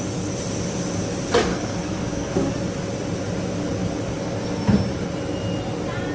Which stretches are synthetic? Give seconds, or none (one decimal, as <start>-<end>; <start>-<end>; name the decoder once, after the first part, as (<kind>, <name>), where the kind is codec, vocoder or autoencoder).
1.5-2.5 (codec, SNAC)